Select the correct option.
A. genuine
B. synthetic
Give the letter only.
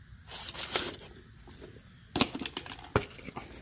A